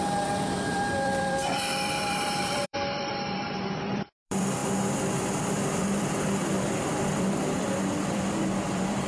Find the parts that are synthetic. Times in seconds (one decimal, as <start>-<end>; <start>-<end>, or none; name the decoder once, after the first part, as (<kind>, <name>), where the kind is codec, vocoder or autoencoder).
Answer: 0.0-4.6 (vocoder, BigVGAN v2); 5.1-9.1